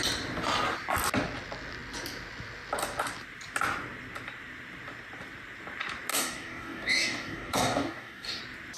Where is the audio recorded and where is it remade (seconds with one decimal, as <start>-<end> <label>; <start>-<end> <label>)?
0.0-6.1 recorded; 6.1-8.4 remade; 8.4-8.8 recorded